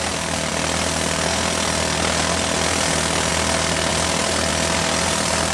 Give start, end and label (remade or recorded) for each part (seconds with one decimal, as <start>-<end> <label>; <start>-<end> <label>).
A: 0.0-5.5 recorded